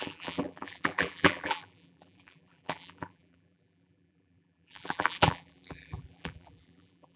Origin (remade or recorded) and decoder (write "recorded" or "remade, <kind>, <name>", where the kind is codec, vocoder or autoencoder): remade, vocoder, BigVGAN v2